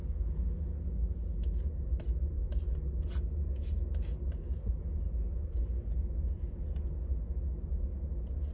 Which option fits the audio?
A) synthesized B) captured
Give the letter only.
B